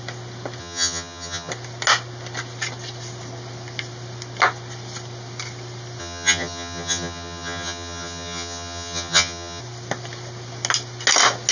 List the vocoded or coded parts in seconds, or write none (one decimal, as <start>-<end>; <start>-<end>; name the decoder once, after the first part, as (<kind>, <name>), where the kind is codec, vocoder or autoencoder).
0.6-1.5 (vocoder, HiFi-GAN); 6.0-9.6